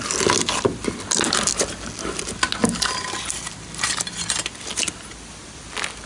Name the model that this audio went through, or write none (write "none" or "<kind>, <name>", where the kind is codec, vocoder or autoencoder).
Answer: none